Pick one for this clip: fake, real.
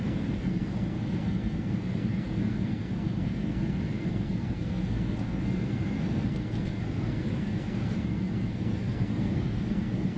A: fake